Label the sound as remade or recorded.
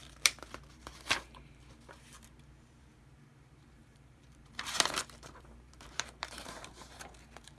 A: remade